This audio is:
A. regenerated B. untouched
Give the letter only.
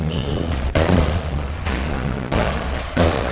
A